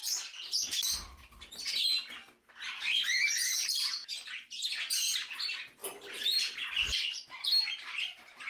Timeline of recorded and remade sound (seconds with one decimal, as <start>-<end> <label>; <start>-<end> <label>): 0.0-2.5 recorded; 2.5-4.0 remade; 4.0-4.9 recorded; 4.9-5.8 remade; 5.8-6.9 recorded; 6.9-8.5 remade